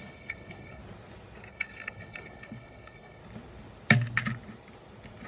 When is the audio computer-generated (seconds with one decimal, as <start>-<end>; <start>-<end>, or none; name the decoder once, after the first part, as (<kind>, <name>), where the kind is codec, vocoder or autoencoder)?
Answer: 0.0-0.8 (codec, HILCodec); 1.5-3.2